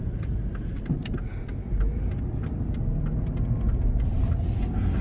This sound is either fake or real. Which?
real